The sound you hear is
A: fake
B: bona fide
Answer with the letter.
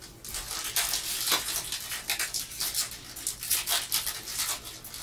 B